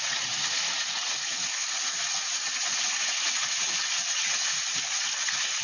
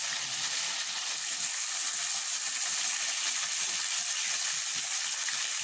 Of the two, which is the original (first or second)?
second